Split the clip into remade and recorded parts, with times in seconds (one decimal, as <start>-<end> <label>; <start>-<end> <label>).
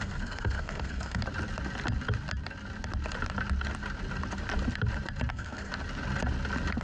0.0-1.2 remade; 1.2-5.3 recorded; 5.3-5.7 remade; 5.7-6.8 recorded